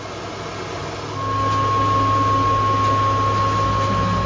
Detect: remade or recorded recorded